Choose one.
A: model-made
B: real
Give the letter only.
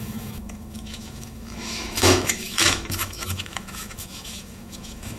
A